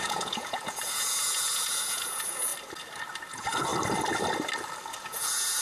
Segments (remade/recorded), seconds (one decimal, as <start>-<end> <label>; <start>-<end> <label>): 0.0-2.5 remade; 2.5-3.3 recorded; 3.3-3.7 remade; 3.7-4.9 recorded; 4.9-5.6 remade